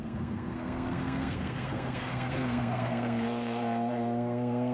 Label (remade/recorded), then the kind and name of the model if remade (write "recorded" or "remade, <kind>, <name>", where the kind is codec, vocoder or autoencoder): remade, codec, SNAC